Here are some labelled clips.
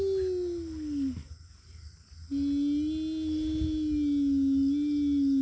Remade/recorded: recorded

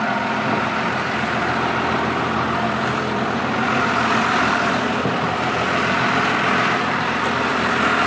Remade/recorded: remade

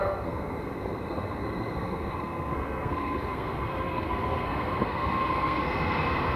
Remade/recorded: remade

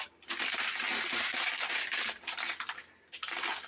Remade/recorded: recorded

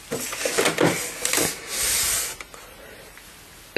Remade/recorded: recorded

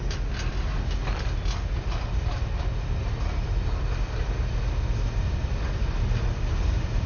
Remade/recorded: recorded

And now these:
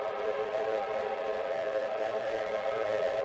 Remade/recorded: remade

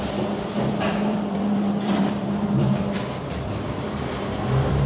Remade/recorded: remade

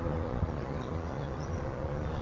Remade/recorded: remade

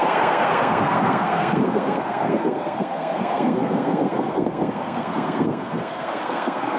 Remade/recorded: remade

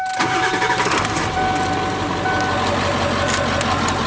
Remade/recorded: recorded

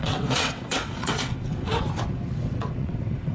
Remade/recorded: remade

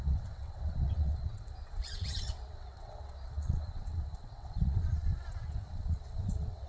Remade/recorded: remade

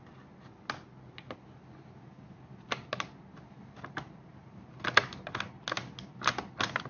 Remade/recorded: recorded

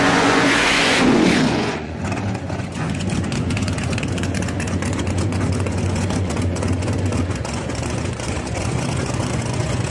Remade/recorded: remade